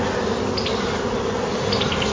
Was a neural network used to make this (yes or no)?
no